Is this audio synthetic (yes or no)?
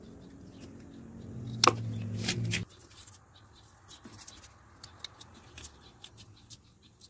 no